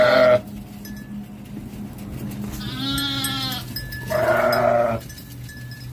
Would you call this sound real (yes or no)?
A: yes